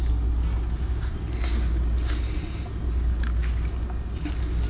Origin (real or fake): real